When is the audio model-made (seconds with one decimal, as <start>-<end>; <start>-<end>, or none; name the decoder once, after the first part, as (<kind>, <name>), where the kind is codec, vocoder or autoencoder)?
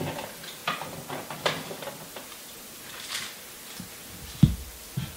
none